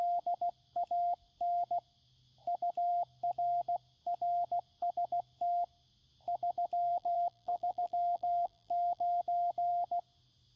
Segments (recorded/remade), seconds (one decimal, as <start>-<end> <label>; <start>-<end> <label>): 0.0-6.9 recorded; 6.9-9.2 remade; 9.2-10.6 recorded